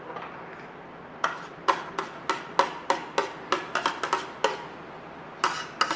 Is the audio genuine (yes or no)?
yes